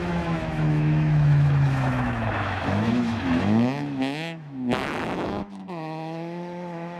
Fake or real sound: fake